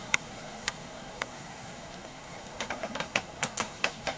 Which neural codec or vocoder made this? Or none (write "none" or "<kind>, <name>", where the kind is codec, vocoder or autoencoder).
codec, SNAC